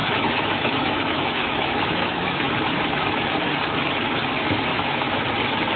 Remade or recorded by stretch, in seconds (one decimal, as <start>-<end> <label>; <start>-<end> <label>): 0.0-2.5 remade; 2.5-4.7 recorded; 4.7-5.2 remade; 5.2-5.8 recorded